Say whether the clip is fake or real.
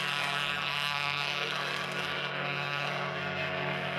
fake